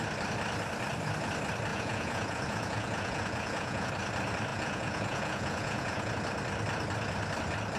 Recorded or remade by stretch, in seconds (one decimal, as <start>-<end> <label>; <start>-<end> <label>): 0.0-1.7 recorded; 1.7-3.9 remade; 3.9-4.5 recorded; 4.5-6.1 remade; 6.1-7.8 recorded